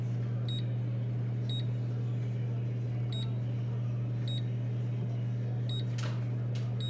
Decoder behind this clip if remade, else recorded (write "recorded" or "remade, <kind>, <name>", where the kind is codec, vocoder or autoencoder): recorded